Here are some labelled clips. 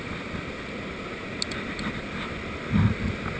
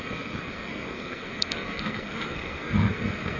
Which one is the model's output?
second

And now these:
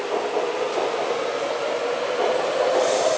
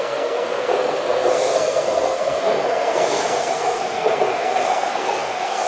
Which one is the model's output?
second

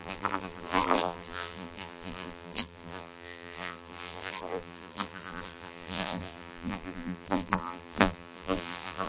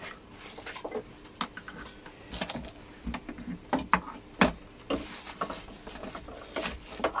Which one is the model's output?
first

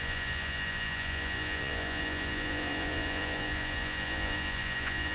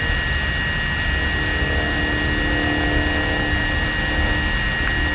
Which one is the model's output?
first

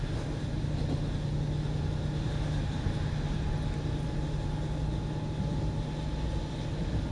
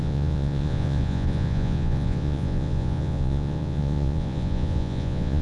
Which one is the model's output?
second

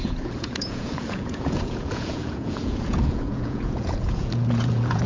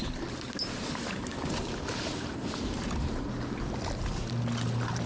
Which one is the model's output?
first